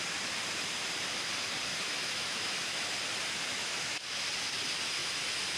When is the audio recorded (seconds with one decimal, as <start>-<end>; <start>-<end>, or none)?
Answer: 0.0-1.7; 2.8-3.5; 4.3-5.6